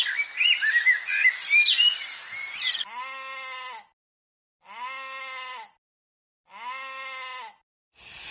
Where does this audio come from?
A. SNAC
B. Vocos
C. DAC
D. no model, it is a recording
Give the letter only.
D